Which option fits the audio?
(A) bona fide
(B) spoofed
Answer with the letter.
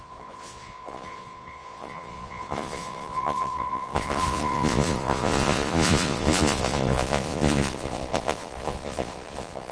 B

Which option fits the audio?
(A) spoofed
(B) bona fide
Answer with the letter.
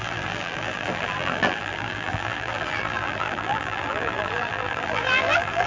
A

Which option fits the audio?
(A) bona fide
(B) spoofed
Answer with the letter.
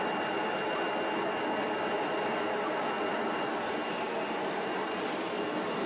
A